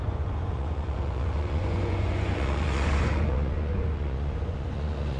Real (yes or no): no